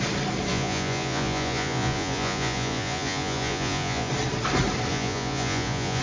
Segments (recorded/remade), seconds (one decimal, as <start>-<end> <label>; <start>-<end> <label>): 0.0-0.5 recorded; 0.5-4.1 remade; 4.1-4.9 recorded; 4.9-6.0 remade